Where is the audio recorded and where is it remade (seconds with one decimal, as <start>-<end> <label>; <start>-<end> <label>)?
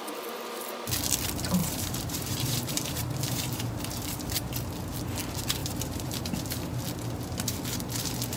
0.0-1.6 recorded; 1.6-4.2 remade; 4.2-5.6 recorded; 5.6-6.2 remade; 6.2-8.4 recorded